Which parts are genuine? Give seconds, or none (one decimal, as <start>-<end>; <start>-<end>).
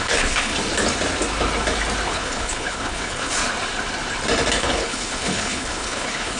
0.5-2.1; 3.4-4.6